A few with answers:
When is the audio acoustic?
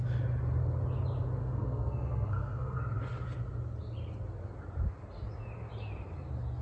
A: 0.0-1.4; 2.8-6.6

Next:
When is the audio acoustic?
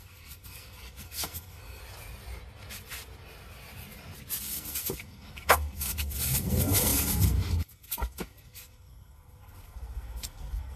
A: 1.8-4.4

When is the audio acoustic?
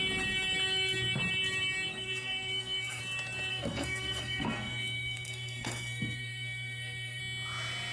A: 0.0-1.9; 3.0-3.5; 7.2-7.9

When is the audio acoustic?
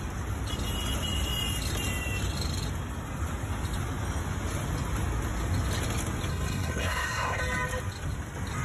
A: 0.0-6.3; 7.4-8.6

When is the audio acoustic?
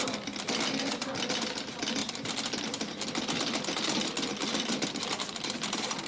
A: 0.0-6.1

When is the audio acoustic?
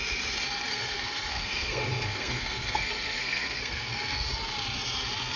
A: 0.0-0.7; 3.9-5.4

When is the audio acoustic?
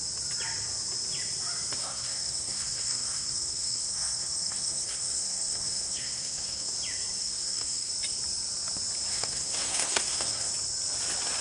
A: 0.0-1.8; 6.7-7.2; 7.9-9.1; 10.5-11.4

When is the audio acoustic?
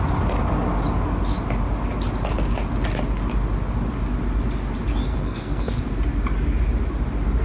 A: 0.0-5.1; 5.8-7.4